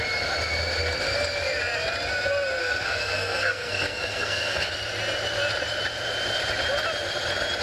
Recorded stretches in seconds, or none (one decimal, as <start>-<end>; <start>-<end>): 0.0-2.6; 4.7-7.6

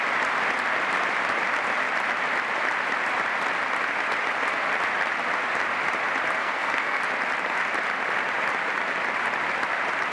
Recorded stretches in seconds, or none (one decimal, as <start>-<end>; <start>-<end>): 0.0-6.4; 7.0-10.1